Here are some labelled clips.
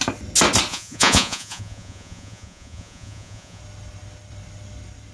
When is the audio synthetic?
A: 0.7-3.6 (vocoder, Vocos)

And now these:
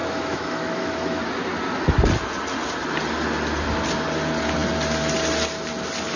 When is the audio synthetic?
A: 0.0-1.2 (autoencoder, DAC-VAE)

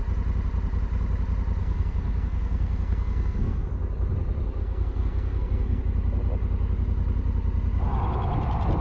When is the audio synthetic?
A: 1.6-3.7 (codec, SNAC); 4.6-5.8

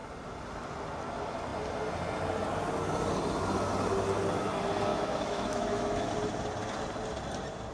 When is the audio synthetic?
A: 4.9-6.1 (autoencoder, DAC-VAE)

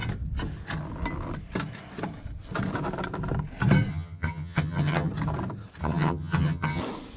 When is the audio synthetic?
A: 3.9-5.1 (vocoder, HiFi-GAN); 5.8-6.8

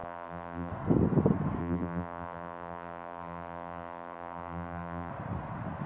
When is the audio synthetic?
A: 0.0-0.7 (vocoder, BigVGAN v2); 1.6-5.1